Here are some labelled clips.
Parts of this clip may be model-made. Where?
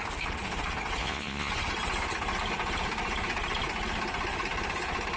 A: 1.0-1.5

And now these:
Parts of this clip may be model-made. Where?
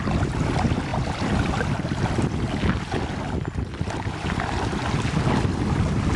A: none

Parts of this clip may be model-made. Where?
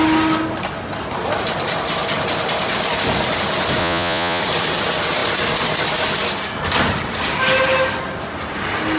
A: 3.8-4.4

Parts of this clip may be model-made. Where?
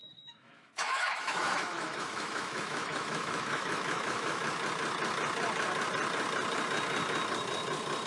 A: 0.0-4.4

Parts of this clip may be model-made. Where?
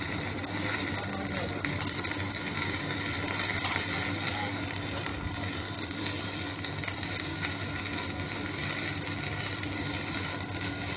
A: none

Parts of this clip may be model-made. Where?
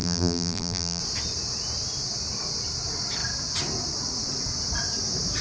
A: 0.0-1.0